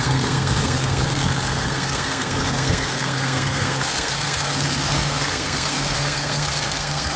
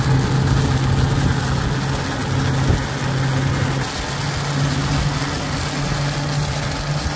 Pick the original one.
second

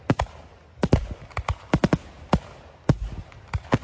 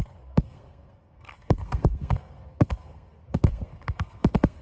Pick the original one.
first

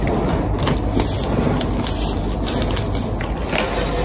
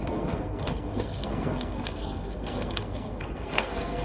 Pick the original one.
first